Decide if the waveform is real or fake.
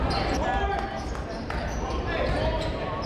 real